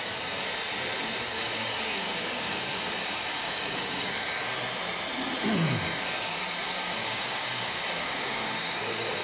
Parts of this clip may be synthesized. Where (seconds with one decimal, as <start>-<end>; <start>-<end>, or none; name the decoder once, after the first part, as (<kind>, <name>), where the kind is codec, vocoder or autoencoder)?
1.4-2.7 (codec, DAC); 3.4-4.1; 7.0-9.2